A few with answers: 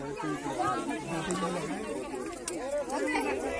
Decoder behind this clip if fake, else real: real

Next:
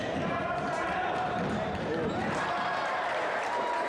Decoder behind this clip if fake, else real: fake, vocoder, BigVGAN v2